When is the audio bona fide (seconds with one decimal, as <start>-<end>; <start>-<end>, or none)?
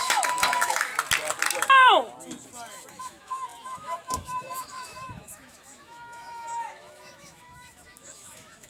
0.9-2.9